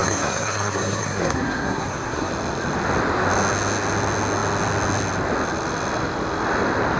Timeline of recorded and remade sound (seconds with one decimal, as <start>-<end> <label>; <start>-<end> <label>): 0.0-2.3 remade; 2.3-7.0 recorded